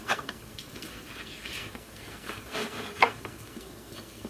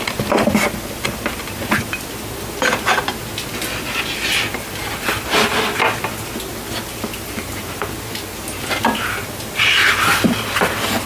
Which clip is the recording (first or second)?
second